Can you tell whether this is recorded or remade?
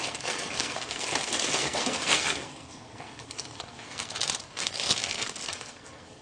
remade